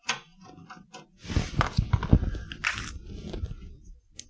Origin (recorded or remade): recorded